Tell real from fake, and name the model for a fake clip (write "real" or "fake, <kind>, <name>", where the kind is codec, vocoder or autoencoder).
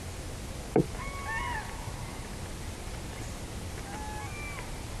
real